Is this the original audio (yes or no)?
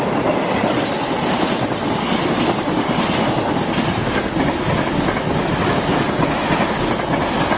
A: yes